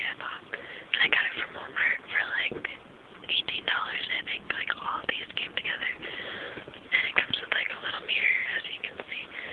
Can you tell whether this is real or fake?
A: real